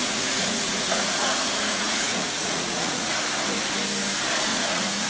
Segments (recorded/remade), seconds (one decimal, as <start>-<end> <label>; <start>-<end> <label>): 0.0-3.1 remade; 3.1-4.5 recorded; 4.5-5.1 remade